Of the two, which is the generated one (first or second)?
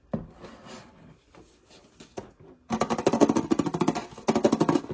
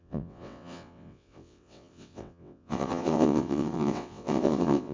second